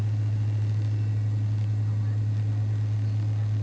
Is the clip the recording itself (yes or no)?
yes